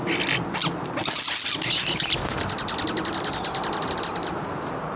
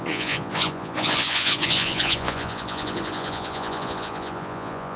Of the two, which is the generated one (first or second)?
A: second